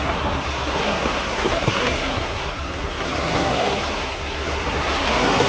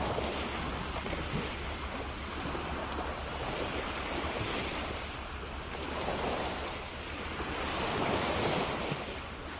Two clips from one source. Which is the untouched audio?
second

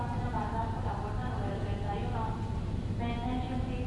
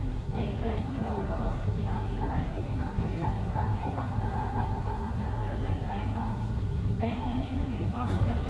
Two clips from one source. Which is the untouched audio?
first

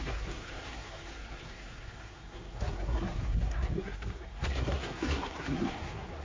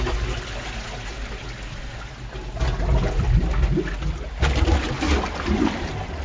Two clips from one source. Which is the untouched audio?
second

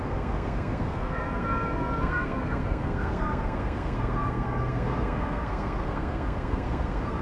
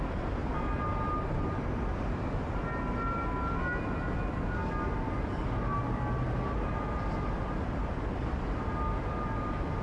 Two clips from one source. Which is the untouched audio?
second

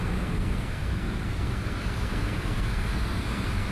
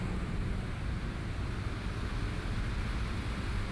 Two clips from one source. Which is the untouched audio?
second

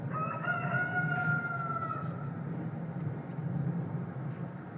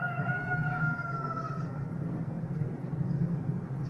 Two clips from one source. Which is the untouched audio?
first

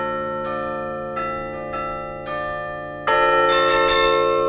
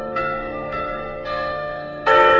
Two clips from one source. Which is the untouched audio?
first